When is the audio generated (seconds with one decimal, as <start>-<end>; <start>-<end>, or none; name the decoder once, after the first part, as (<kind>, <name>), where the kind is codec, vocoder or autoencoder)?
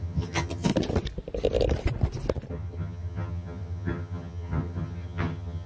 0.0-0.7 (vocoder, HiFi-GAN); 2.5-5.7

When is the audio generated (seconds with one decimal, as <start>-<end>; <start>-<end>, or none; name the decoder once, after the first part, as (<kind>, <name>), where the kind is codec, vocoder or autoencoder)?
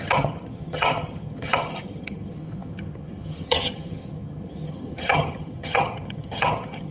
0.0-6.9 (vocoder, HiFi-GAN)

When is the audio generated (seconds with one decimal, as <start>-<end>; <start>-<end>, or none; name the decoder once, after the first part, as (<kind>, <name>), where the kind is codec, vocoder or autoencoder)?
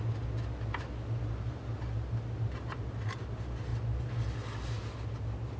none